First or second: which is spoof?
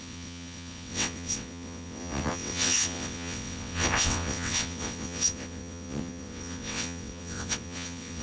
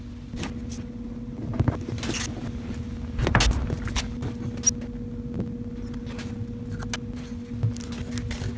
first